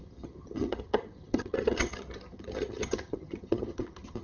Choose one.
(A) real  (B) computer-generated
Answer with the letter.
B